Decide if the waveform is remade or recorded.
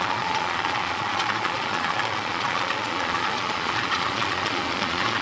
remade